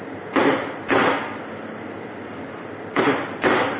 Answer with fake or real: real